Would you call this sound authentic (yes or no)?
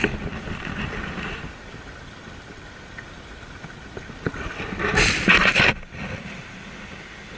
yes